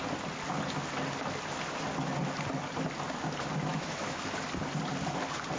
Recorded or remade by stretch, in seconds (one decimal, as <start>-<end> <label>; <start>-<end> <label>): 0.0-3.7 recorded; 3.7-4.2 remade; 4.2-5.6 recorded